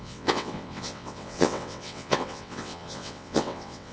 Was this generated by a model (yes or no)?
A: yes